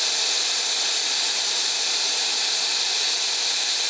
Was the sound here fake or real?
real